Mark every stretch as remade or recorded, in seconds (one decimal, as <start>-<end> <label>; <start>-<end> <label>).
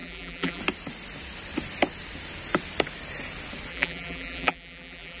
0.0-0.6 remade; 0.6-3.7 recorded; 3.7-5.2 remade